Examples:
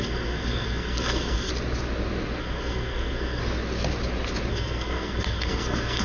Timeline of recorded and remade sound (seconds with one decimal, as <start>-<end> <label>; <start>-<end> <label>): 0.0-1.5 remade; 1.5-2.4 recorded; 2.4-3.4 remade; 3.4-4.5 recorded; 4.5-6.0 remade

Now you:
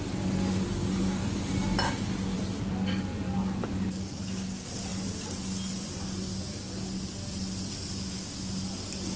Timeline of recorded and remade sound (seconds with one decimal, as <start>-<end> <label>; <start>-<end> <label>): 0.0-9.2 recorded

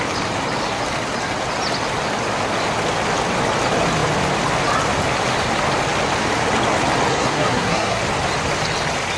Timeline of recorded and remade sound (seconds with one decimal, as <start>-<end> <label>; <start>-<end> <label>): 0.0-7.1 recorded; 7.1-8.0 remade; 8.0-9.2 recorded

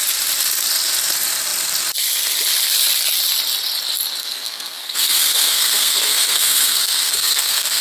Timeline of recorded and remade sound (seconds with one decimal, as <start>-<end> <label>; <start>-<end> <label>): 0.0-4.2 recorded; 4.2-7.8 remade

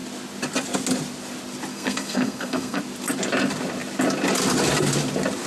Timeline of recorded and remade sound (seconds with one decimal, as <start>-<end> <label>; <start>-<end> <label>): 0.0-1.7 recorded; 1.7-2.8 remade; 2.8-5.5 recorded